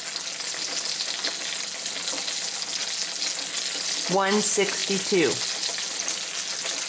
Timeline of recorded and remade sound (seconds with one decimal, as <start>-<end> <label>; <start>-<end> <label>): 0.0-6.9 recorded